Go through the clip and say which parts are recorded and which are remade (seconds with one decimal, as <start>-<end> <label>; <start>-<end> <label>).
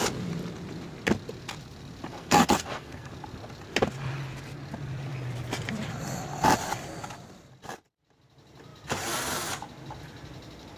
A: 0.0-2.1 recorded; 2.1-3.1 remade; 3.1-10.8 recorded